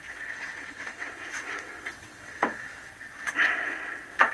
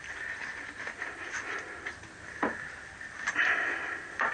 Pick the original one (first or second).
second